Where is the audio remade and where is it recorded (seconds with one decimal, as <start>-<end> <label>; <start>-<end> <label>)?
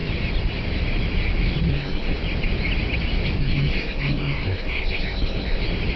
0.0-1.7 recorded; 1.7-2.2 remade; 2.2-3.4 recorded; 3.4-5.6 remade; 5.6-6.0 recorded